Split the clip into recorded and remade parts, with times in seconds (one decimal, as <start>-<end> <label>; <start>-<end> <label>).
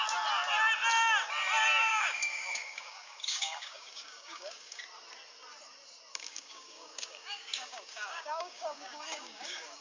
0.0-1.9 recorded; 1.9-4.8 remade; 4.8-6.1 recorded; 6.1-9.8 remade